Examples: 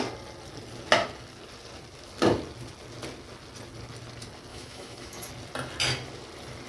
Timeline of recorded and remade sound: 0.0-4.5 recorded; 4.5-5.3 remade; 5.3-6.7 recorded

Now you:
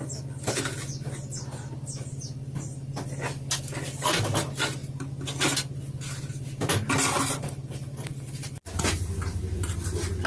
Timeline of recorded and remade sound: 0.0-10.3 recorded

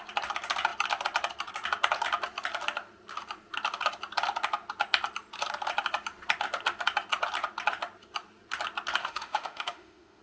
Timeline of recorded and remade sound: 0.0-9.0 recorded; 9.0-10.2 remade